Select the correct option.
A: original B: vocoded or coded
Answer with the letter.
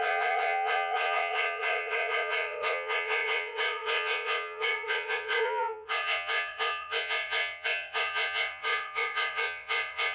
B